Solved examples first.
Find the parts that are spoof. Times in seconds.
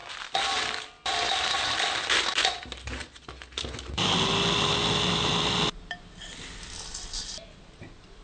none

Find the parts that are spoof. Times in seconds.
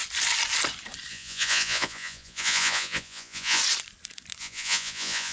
1.1-3.6; 4.4-5.3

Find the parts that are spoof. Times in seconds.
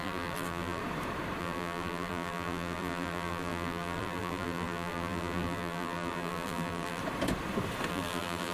0.0-0.8; 1.4-7.0; 7.9-8.5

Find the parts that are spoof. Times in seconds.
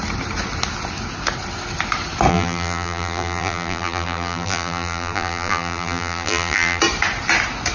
2.3-6.8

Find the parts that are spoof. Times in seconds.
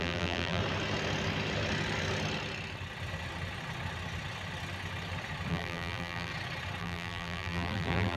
0.0-0.6; 5.5-6.3; 6.8-8.2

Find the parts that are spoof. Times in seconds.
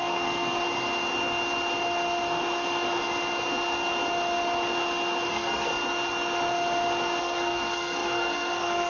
0.0-0.5; 5.3-5.7; 7.2-8.9